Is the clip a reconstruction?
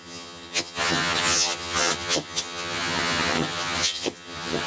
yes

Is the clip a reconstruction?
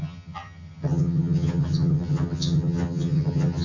yes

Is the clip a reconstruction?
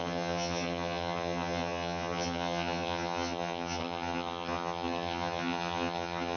yes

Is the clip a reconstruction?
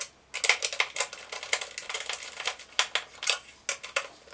no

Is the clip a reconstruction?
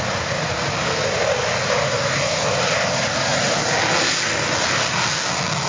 no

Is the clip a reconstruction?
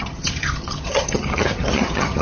yes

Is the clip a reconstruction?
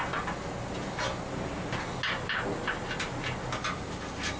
no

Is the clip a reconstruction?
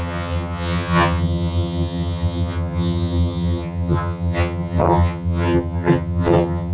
yes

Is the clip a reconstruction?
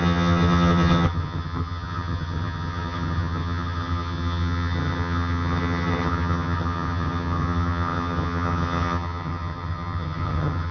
yes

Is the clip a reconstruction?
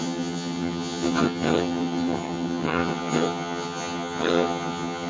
yes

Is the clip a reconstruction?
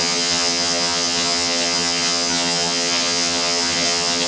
yes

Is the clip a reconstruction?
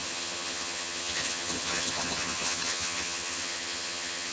yes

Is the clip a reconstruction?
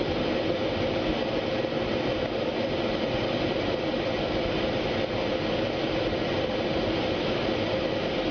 no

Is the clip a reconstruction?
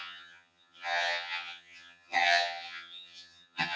yes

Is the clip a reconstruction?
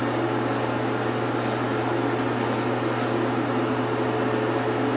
no